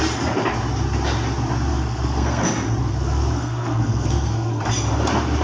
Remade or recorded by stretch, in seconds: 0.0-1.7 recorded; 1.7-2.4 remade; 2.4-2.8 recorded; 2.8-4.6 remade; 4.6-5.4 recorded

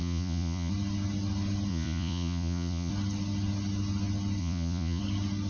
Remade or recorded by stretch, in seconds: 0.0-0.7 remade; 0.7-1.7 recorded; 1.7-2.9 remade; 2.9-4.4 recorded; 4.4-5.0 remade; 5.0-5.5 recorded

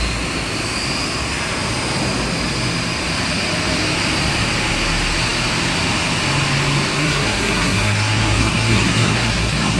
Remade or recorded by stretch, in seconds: 0.0-7.0 recorded; 7.0-9.8 remade

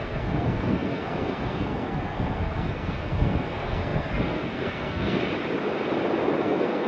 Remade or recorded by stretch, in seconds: 0.0-5.2 remade; 5.2-6.4 recorded; 6.4-6.9 remade

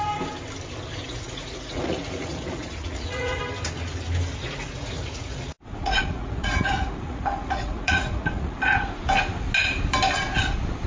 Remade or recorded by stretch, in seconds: 0.0-1.1 recorded; 1.1-3.4 remade; 3.4-4.3 recorded; 4.3-9.0 remade; 9.0-10.9 recorded

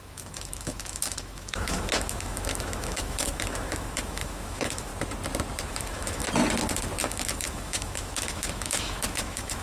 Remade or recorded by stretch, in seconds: 0.0-4.9 remade; 4.9-5.7 recorded; 5.7-6.2 remade; 6.2-7.0 recorded; 7.0-9.6 remade

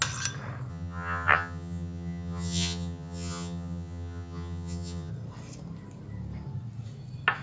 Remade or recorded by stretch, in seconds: 0.0-0.7 recorded; 0.7-5.1 remade; 5.1-7.4 recorded

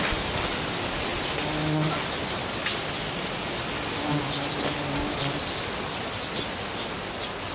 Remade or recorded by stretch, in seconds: 0.0-7.5 recorded